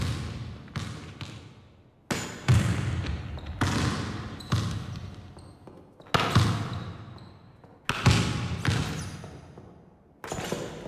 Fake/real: real